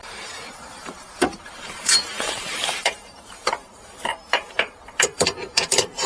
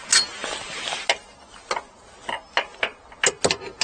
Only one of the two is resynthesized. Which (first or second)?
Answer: first